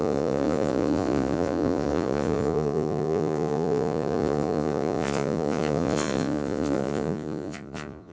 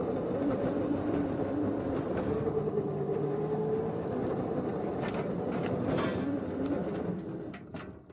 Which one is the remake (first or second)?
first